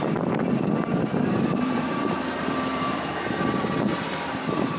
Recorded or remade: remade